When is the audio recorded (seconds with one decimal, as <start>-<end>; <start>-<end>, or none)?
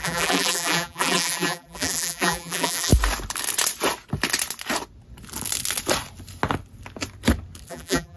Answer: 2.9-7.7